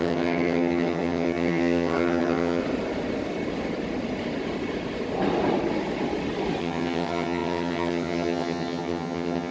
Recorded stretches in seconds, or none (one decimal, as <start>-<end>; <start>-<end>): 2.6-6.6